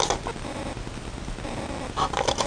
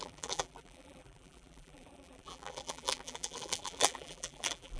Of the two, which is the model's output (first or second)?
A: second